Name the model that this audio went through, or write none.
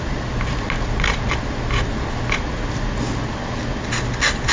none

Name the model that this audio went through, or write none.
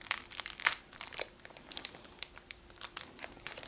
vocoder, BigVGAN v2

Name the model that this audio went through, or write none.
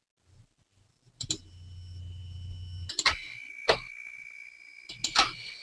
none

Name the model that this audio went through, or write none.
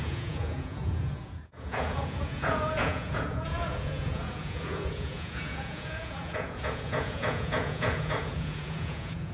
vocoder, Vocos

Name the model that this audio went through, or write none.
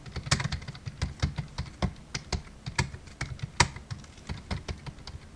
none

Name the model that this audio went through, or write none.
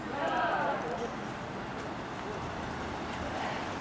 none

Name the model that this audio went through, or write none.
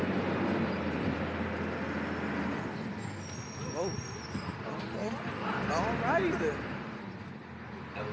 none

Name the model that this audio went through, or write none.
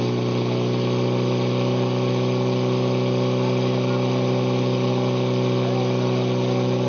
none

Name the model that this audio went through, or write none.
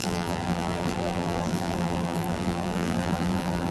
vocoder, BigVGAN v2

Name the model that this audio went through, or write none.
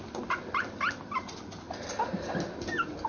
none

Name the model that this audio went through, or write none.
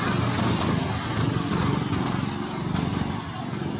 none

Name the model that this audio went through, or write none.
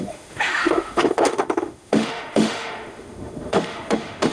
autoencoder, DAC-VAE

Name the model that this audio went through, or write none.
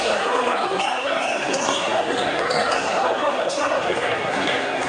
codec, SNAC